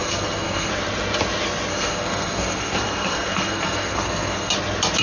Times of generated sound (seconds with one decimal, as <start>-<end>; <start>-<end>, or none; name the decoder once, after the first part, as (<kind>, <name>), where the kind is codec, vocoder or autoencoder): 0.0-0.7 (codec, SNAC); 1.7-4.5